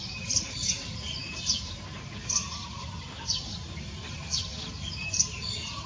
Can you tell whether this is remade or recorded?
recorded